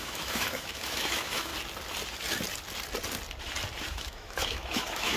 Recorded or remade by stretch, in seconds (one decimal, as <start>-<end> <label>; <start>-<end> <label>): 0.0-1.5 remade; 1.5-3.9 recorded; 3.9-5.2 remade